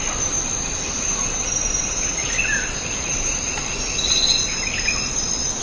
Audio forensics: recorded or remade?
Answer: recorded